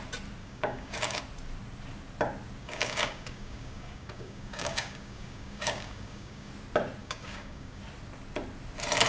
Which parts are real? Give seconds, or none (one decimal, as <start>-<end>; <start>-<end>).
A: 0.0-0.4; 1.2-2.6; 6.5-7.0; 7.8-9.1